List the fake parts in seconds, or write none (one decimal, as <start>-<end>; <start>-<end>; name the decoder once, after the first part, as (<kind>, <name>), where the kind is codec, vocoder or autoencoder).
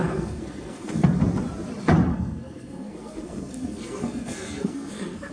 0.0-1.2 (codec, SNAC); 2.1-5.3